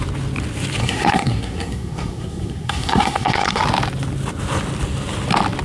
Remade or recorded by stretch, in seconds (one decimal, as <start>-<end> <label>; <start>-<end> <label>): 0.0-0.8 recorded; 0.8-3.6 remade; 3.6-5.6 recorded